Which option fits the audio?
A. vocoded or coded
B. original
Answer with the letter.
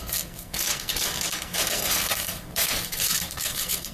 A